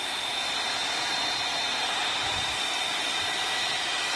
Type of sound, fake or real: real